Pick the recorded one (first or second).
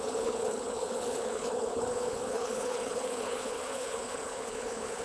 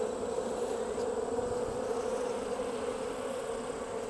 second